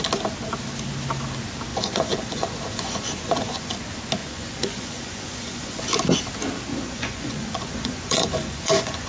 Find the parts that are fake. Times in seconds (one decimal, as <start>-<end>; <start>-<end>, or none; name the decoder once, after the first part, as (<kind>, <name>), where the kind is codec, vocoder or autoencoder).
1.7-3.7 (vocoder, Vocos); 4.2-5.8; 6.7-9.1